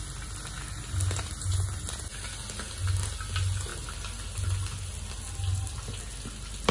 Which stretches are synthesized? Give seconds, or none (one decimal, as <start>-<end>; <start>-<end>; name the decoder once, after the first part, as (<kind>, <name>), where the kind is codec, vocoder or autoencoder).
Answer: none